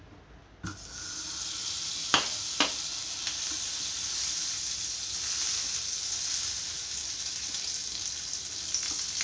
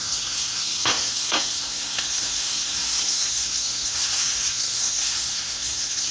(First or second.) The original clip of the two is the first